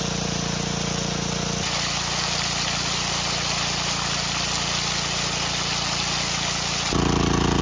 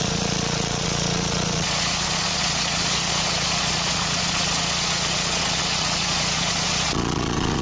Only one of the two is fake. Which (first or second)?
second